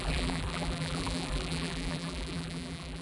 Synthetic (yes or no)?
yes